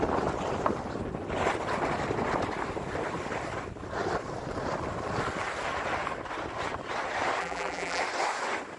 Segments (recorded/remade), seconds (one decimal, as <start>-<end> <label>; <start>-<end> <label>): 0.0-7.4 recorded; 7.4-8.0 remade; 8.0-8.8 recorded